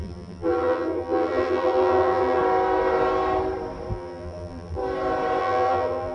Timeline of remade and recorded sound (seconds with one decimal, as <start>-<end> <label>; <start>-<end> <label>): 0.0-2.4 remade; 2.4-3.9 recorded; 3.9-4.8 remade; 4.8-5.4 recorded; 5.4-6.1 remade